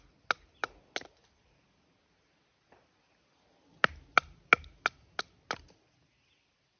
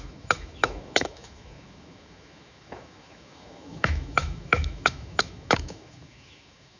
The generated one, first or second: second